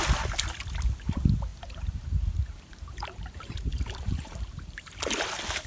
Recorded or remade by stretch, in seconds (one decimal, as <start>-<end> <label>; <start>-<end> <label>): 0.0-1.5 recorded; 1.5-4.9 remade; 4.9-5.7 recorded